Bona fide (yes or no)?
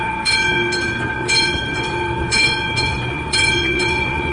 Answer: no